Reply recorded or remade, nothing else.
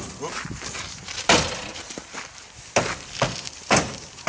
remade